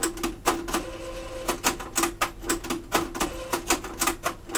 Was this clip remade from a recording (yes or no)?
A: no